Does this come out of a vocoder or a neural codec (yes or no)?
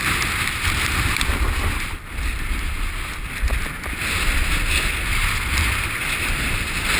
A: no